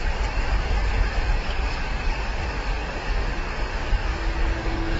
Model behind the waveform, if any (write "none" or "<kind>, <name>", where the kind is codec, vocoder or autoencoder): codec, DAC